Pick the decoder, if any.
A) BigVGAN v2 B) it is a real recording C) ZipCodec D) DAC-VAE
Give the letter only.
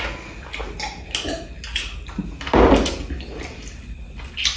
B